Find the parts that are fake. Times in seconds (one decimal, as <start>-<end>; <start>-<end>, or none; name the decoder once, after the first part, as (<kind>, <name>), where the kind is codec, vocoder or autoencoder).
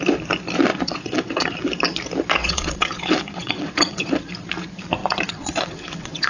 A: 0.7-1.5 (vocoder, WaveNeXt); 2.4-4.3; 5.0-6.3